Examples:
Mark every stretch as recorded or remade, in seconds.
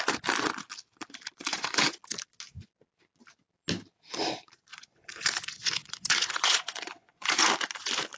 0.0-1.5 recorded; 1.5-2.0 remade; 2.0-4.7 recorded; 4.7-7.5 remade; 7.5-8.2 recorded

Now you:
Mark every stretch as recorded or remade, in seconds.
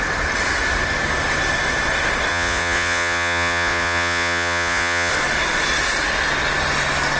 0.0-2.3 recorded; 2.3-5.1 remade; 5.1-7.2 recorded